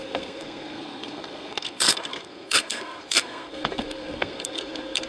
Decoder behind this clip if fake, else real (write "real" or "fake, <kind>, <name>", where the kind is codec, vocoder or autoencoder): fake, codec, SNAC